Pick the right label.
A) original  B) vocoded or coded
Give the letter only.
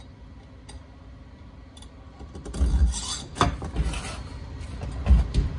A